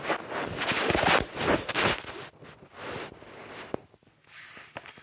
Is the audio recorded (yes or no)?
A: yes